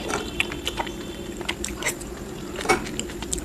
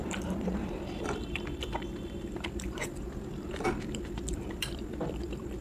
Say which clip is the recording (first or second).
first